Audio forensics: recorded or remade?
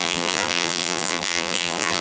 remade